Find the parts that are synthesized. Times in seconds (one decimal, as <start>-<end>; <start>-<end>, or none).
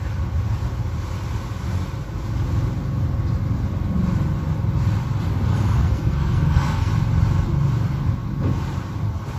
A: 5.5-6.9